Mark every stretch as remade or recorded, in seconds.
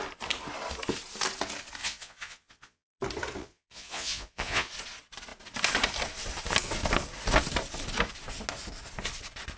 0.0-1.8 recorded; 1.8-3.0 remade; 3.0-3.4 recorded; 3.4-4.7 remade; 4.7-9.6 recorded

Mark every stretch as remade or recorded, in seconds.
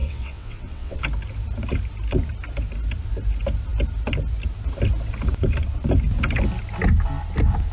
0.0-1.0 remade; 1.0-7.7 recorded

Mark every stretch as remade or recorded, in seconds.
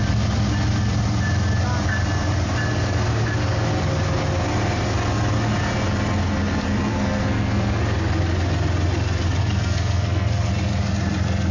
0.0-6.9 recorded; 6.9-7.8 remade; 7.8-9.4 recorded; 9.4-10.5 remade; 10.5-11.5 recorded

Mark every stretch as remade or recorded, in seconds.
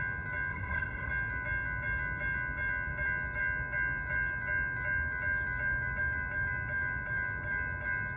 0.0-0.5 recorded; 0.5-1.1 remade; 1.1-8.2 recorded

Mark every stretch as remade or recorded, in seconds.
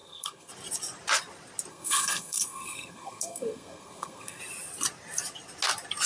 0.0-0.5 remade; 0.5-1.7 recorded; 1.7-4.4 remade; 4.4-6.1 recorded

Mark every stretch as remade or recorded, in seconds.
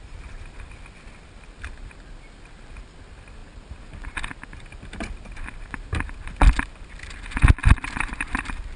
0.0-8.8 recorded